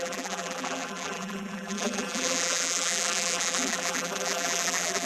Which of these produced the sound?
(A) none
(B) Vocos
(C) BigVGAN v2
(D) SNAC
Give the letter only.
C